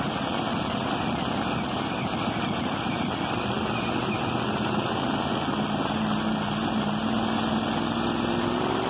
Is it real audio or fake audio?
real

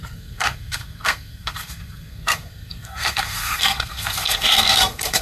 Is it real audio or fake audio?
fake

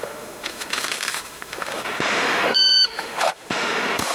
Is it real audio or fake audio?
fake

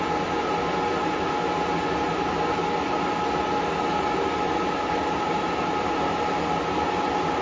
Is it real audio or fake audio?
real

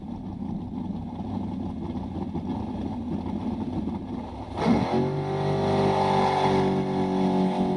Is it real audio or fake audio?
real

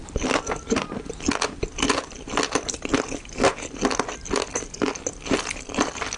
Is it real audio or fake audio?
real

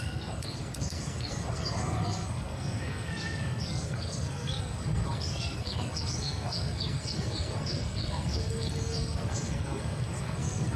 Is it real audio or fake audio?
fake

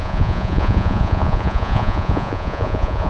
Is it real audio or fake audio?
fake